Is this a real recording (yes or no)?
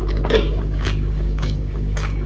no